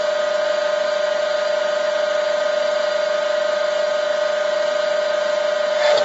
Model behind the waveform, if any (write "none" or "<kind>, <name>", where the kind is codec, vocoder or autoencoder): none